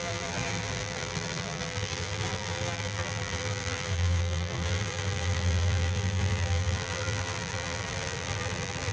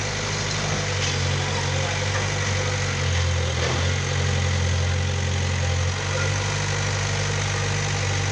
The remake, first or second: first